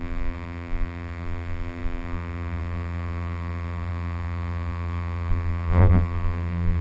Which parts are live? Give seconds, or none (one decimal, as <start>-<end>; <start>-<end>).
none